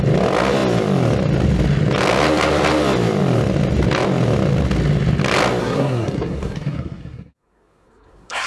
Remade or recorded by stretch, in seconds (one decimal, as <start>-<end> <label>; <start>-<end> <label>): 0.0-5.6 recorded; 5.6-8.5 remade